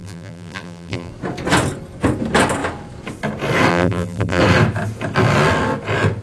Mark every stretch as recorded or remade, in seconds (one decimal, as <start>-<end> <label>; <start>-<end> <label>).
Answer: 0.0-1.1 remade; 1.1-3.7 recorded; 3.7-4.4 remade; 4.4-6.2 recorded